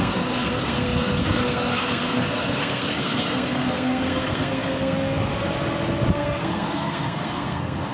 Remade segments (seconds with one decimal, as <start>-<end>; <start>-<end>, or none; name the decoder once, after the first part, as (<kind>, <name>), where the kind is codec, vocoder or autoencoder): 0.0-5.3 (codec, SNAC); 6.1-7.9